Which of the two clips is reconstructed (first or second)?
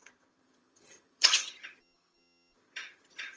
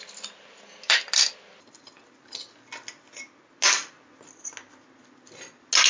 first